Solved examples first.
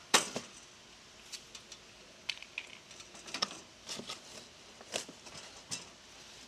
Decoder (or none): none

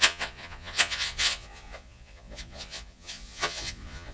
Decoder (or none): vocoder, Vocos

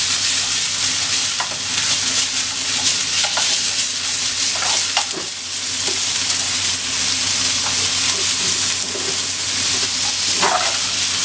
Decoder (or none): none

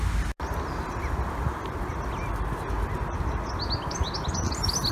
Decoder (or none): none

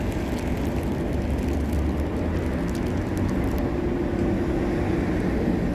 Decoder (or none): none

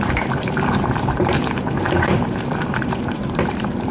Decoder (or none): vocoder, BigVGAN v2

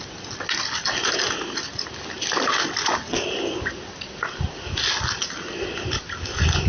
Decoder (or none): none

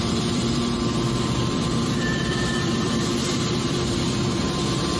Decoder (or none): vocoder, BigVGAN v2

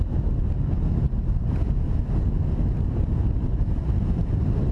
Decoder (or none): none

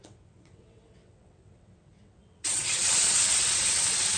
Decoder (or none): vocoder, WaveNeXt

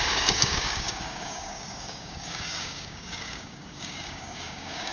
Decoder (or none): codec, DAC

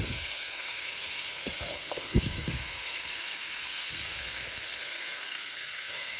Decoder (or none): codec, SNAC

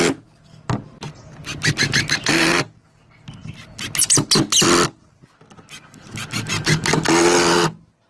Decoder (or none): none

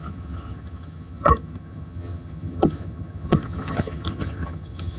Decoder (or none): vocoder, HiFi-GAN